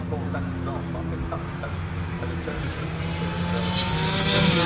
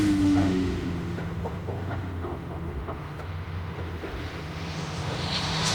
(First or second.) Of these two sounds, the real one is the first